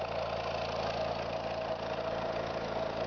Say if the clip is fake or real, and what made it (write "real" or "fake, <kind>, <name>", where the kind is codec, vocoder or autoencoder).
real